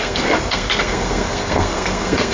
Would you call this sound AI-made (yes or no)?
yes